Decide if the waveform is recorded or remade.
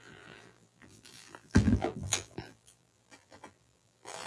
remade